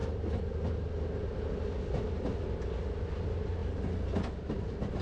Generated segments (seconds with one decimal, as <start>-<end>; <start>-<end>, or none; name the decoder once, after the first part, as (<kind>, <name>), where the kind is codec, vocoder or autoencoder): none